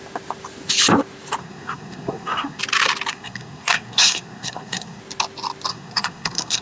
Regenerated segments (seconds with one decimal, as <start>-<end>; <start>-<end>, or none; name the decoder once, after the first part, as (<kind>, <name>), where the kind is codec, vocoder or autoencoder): 1.4-2.6 (codec, SNAC); 3.1-5.0; 5.7-6.6